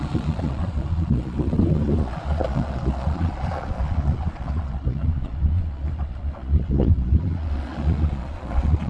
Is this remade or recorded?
remade